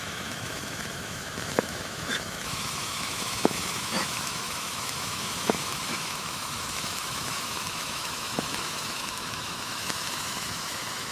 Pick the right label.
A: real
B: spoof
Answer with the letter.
B